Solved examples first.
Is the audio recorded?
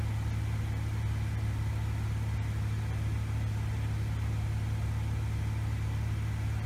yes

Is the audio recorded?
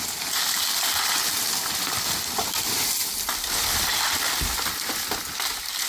yes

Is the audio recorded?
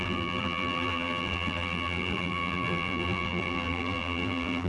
no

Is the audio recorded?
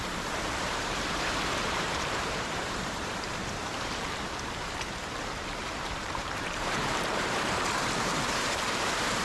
no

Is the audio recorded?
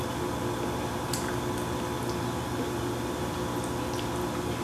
yes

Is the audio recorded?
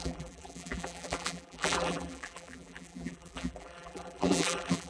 no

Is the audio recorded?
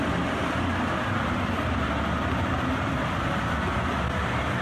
yes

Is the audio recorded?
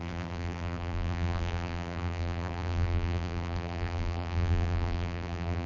no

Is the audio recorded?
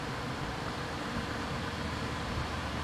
no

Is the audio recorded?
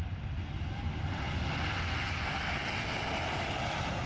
no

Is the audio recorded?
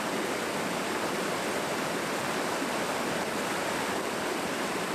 yes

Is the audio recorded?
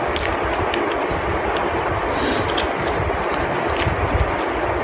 yes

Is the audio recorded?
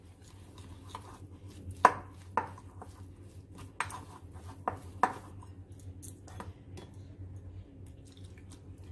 yes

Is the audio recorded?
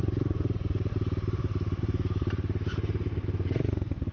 no